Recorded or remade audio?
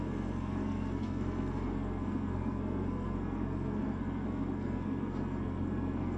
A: remade